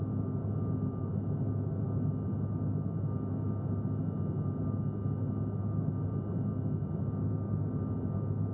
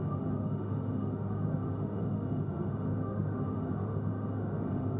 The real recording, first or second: first